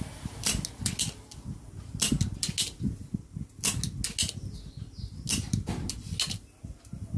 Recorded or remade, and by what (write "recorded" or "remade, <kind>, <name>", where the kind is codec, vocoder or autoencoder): recorded